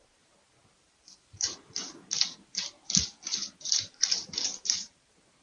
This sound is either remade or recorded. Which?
remade